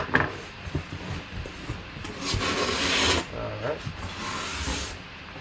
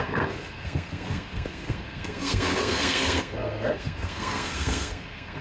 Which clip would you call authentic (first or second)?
first